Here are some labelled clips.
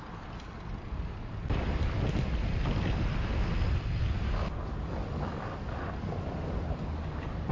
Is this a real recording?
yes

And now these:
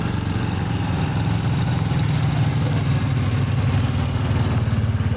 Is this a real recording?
yes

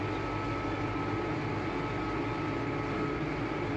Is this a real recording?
yes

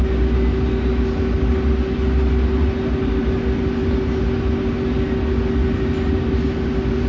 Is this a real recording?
yes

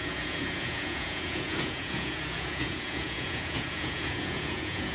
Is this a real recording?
no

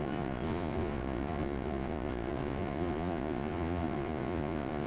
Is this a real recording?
no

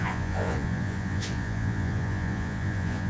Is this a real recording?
no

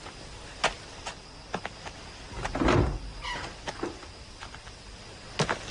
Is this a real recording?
yes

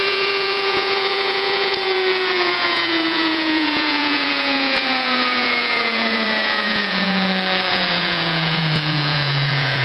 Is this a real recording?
no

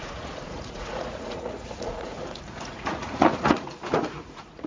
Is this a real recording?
no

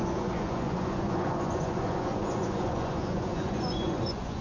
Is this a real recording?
no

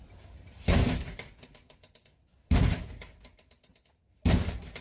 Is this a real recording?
yes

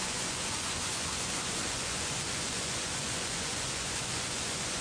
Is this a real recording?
no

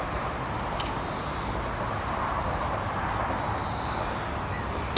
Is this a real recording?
yes